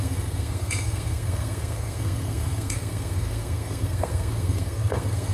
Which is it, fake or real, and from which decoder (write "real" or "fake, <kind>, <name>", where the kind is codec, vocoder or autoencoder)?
fake, codec, SNAC